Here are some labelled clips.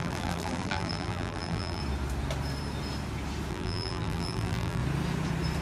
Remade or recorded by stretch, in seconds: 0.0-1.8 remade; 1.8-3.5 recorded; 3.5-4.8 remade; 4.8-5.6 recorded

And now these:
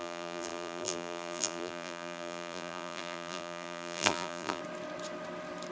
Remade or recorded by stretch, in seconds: 0.0-4.6 remade; 4.6-5.7 recorded

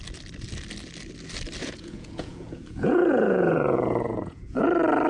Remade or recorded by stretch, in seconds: 0.0-1.6 recorded; 1.6-4.6 remade; 4.6-5.1 recorded